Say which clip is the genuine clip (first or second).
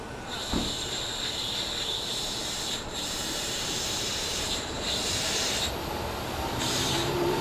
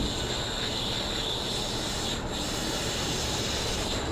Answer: second